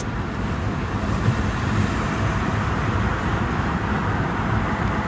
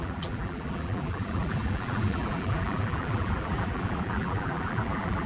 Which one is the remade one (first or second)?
second